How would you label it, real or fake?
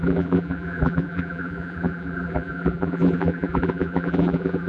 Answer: fake